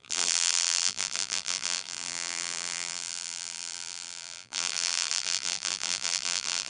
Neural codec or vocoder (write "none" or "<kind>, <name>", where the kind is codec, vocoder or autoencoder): vocoder, BigVGAN v2